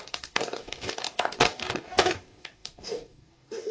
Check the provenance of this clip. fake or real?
fake